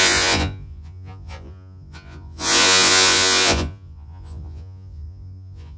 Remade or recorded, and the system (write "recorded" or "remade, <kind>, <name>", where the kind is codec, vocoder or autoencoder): remade, vocoder, Vocos